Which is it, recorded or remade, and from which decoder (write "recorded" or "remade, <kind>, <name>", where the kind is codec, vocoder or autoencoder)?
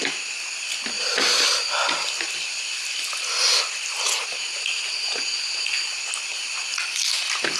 recorded